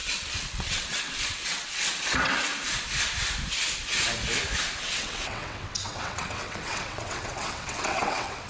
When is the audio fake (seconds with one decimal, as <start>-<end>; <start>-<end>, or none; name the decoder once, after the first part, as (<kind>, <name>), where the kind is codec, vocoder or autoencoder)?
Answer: 0.0-2.5 (vocoder, WaveNeXt); 4.8-8.5